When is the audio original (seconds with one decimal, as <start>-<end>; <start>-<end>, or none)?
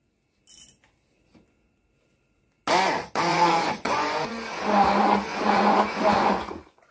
0.0-3.3; 4.3-5.3